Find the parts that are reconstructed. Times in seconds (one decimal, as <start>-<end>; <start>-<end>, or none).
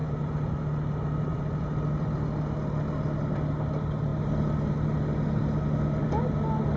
0.0-0.6; 1.3-1.8